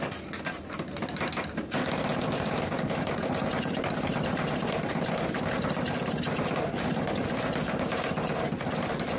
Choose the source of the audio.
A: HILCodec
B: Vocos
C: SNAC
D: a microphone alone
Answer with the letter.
D